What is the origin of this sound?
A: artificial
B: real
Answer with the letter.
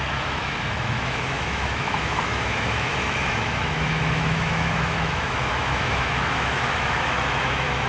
A